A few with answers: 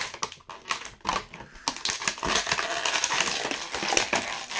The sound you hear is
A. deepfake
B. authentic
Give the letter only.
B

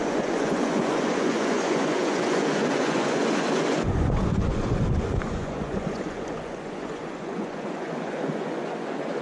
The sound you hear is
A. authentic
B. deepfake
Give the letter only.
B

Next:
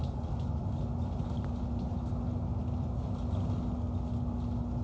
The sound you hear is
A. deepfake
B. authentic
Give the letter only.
B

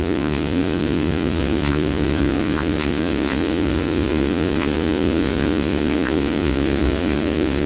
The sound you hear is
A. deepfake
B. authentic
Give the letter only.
A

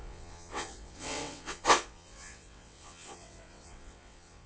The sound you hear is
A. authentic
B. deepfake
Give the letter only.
B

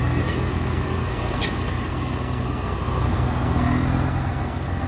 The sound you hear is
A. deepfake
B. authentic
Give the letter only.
A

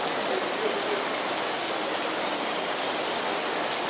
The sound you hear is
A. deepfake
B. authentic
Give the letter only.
B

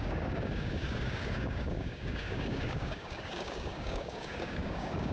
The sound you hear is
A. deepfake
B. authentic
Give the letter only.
A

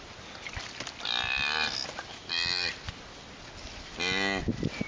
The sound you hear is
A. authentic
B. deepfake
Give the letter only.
A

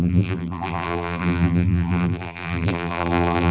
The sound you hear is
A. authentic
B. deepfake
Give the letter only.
B